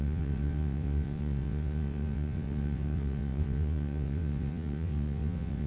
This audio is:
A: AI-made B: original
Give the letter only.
A